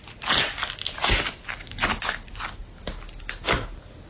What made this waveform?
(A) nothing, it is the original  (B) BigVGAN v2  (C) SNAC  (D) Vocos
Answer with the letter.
A